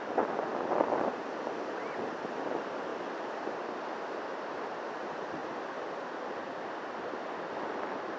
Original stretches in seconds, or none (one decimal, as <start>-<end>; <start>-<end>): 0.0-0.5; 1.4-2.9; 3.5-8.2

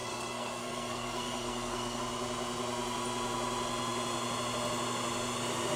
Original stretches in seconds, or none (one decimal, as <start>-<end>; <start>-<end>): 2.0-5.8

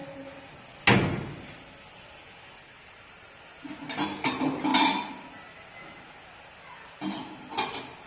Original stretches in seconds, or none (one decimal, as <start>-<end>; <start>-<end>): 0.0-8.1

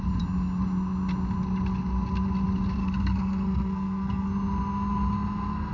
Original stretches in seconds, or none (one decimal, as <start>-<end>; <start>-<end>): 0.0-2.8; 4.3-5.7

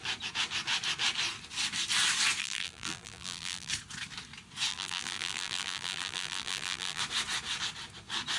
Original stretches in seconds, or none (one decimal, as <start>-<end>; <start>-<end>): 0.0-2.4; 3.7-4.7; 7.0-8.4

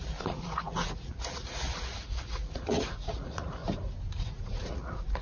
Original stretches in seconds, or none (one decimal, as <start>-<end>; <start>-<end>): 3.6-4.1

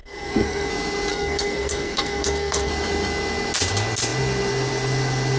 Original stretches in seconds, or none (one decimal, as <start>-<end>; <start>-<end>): 0.7-1.1; 2.7-5.4